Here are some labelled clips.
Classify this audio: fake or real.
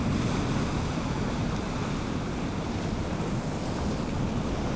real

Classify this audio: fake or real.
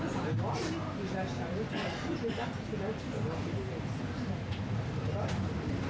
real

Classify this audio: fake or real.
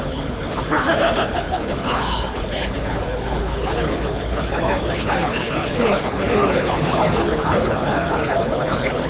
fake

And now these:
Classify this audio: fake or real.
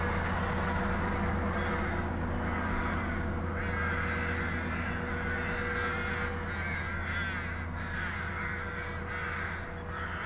real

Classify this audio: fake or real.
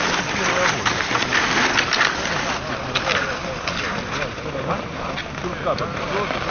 real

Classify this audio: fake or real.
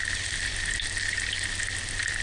real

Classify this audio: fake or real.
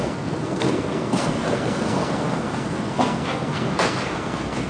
fake